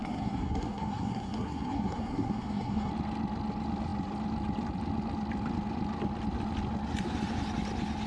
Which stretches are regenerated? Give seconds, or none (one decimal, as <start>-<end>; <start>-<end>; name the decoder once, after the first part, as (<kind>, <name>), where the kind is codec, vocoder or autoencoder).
0.0-2.9 (codec, SNAC)